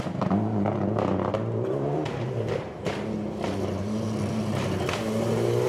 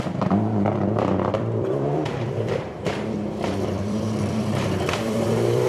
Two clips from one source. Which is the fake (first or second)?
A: second